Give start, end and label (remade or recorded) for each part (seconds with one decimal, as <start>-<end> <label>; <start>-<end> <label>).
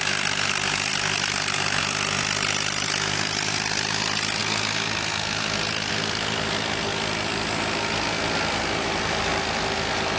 0.0-10.2 recorded